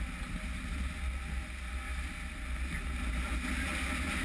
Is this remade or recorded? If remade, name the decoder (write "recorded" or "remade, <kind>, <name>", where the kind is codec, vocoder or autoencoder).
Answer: recorded